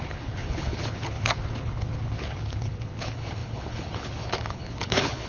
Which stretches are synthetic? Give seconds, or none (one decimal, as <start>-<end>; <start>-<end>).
0.0-5.3